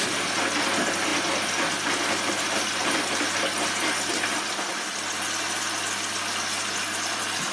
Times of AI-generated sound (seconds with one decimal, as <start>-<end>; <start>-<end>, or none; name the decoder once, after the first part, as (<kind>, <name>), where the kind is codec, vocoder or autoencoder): none